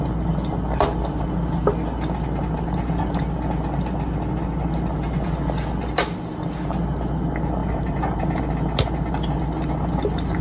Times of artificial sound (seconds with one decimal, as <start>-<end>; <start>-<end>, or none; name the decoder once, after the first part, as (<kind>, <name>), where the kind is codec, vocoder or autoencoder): 7.6-8.4 (vocoder, BigVGAN v2)